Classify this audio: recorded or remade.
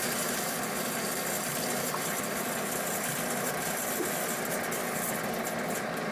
recorded